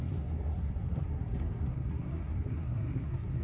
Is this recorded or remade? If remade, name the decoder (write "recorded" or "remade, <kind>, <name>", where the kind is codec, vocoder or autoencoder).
remade, codec, SNAC